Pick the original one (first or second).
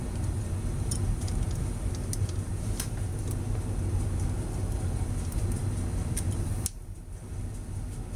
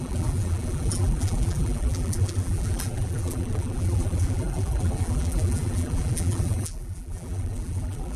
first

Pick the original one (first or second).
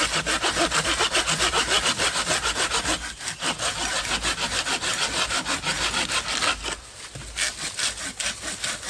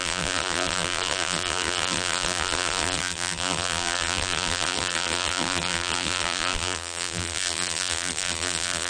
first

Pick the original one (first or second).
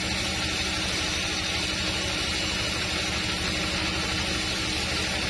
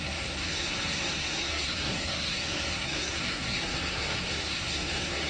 first